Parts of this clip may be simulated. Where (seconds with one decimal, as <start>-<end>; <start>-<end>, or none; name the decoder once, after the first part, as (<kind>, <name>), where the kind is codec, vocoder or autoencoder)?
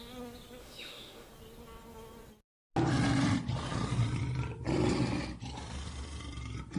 0.6-1.3 (autoencoder, DAC-VAE)